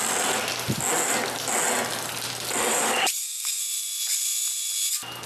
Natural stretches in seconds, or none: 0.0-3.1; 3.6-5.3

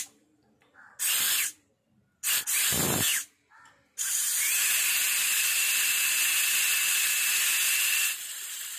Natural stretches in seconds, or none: 0.0-8.8

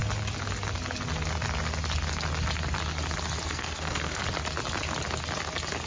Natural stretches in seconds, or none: 0.0-3.5; 4.2-5.9